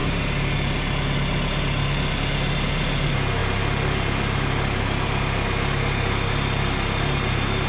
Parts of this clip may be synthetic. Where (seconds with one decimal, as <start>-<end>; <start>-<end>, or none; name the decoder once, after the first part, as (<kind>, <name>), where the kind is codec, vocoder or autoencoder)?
none